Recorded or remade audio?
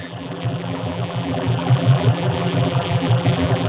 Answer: remade